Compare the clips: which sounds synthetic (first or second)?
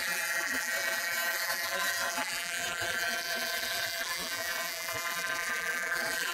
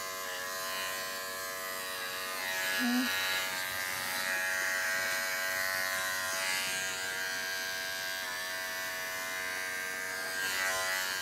first